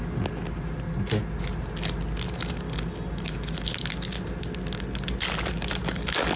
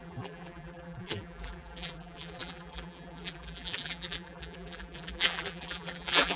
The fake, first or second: second